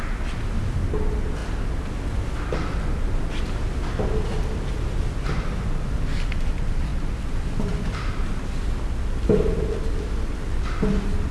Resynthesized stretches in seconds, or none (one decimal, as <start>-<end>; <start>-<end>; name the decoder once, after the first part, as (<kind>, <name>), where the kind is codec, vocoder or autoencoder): none